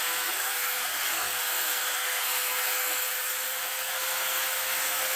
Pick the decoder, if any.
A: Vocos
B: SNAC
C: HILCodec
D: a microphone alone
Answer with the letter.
B